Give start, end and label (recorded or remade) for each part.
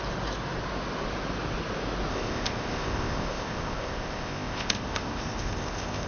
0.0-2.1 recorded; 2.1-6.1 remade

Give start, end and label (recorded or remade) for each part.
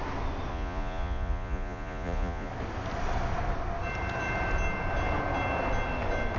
0.0-0.5 recorded; 0.5-2.5 remade; 2.5-6.4 recorded